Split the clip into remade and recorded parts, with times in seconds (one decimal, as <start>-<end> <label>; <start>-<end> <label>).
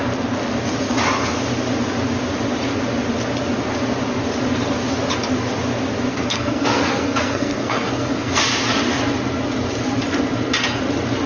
0.0-6.1 recorded; 6.1-8.4 remade; 8.4-11.3 recorded